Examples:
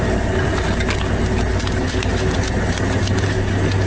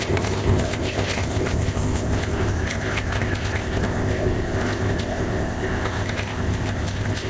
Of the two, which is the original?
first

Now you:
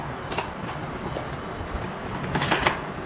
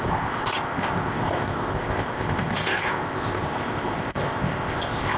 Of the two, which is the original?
first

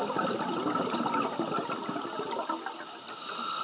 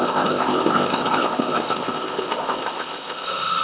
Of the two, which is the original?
first